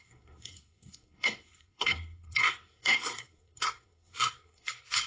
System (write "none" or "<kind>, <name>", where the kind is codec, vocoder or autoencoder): codec, SNAC